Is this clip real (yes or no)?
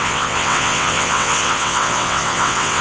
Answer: no